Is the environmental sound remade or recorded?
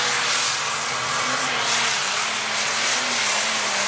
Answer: recorded